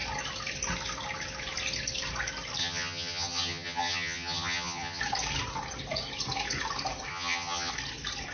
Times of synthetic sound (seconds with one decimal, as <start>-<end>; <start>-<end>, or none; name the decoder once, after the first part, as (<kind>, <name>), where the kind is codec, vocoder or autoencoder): 2.6-5.0 (vocoder, HiFi-GAN); 7.1-7.7